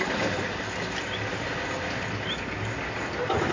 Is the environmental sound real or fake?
real